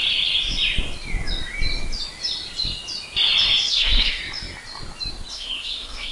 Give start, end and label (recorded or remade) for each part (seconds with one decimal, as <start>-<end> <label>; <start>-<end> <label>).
0.0-3.7 recorded; 3.7-4.2 remade; 4.2-5.3 recorded; 5.3-6.1 remade